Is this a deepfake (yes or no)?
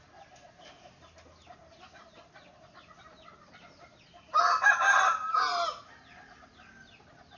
no